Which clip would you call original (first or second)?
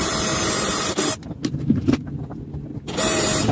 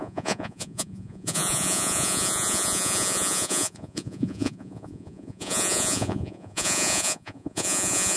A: first